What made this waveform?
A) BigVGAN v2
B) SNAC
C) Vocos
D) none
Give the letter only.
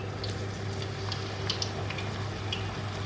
D